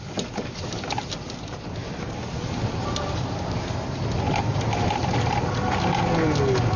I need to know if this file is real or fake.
real